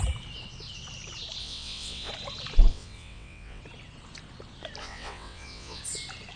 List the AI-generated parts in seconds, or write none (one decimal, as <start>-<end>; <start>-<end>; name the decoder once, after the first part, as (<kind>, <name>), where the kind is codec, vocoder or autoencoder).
1.4-2.1 (vocoder, WaveNeXt); 2.7-3.6; 4.8-5.8